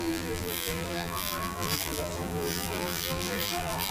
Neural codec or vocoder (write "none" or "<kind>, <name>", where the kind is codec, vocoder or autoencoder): vocoder, BigVGAN v2